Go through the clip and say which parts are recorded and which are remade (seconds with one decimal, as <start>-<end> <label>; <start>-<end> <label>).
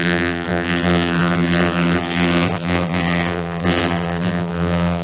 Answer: 0.0-5.0 remade